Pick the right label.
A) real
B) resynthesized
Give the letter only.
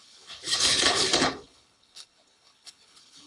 B